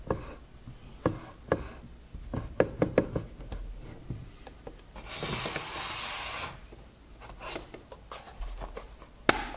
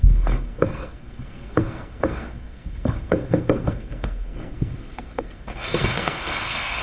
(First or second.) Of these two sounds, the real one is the first